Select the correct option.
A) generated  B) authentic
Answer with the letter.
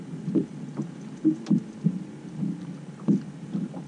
B